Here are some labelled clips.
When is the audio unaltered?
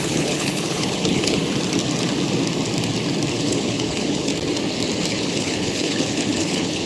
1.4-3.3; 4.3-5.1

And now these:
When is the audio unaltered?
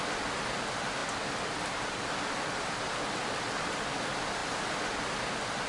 0.0-5.7